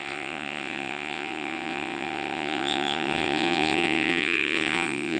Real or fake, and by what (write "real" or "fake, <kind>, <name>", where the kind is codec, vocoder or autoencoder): fake, vocoder, WaveNeXt